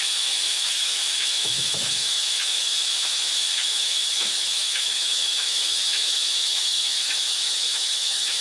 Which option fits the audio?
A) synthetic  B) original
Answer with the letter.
A